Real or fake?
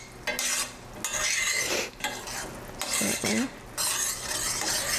real